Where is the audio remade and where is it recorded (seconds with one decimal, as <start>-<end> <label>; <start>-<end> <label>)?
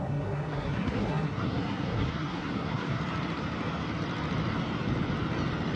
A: 0.0-3.0 remade; 3.0-5.8 recorded